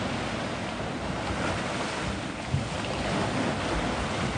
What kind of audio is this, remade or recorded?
recorded